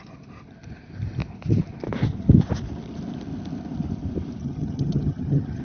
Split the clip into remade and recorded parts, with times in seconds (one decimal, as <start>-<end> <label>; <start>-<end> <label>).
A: 0.0-4.4 recorded; 4.4-5.6 remade